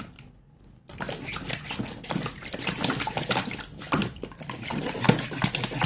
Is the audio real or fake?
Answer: real